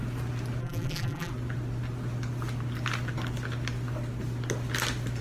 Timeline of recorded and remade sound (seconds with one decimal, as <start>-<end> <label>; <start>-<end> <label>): 0.0-0.6 recorded; 0.6-1.3 remade; 1.3-5.2 recorded